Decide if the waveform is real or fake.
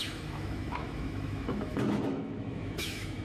fake